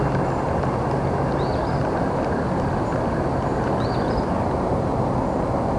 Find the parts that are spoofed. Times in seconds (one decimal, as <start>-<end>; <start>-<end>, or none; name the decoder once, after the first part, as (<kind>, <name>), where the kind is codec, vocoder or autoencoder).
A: none